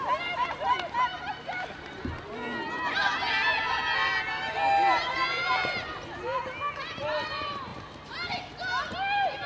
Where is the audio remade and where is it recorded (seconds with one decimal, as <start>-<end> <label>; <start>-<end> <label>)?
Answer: 0.0-9.5 recorded

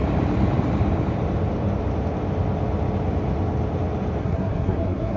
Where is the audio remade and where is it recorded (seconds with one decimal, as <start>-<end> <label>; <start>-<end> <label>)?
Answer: 0.0-4.2 recorded; 4.2-5.2 remade

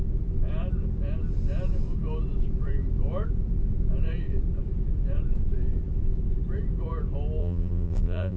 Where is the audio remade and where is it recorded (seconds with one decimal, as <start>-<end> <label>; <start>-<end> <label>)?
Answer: 0.0-7.4 recorded; 7.4-8.4 remade

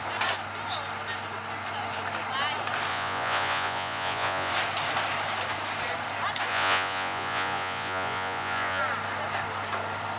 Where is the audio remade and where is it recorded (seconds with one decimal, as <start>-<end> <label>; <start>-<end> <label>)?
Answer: 0.0-2.9 recorded; 2.9-4.5 remade; 4.5-6.5 recorded; 6.5-8.8 remade; 8.8-10.2 recorded

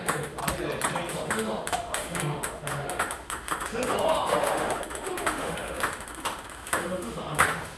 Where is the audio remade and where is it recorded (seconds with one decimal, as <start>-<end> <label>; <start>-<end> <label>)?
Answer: 0.0-0.4 remade; 0.4-1.1 recorded; 1.1-7.8 remade

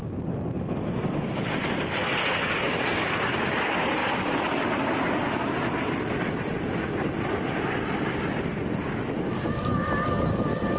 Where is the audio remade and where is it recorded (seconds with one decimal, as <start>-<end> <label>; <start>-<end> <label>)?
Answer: 0.0-10.8 recorded

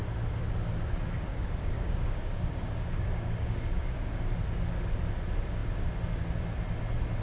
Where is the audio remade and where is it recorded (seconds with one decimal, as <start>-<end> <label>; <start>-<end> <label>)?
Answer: 0.0-1.3 recorded; 1.3-4.2 remade; 4.2-7.2 recorded